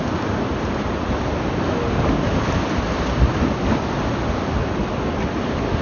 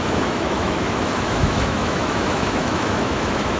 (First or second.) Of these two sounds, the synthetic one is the second